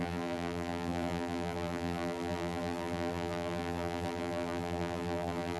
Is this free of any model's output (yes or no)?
no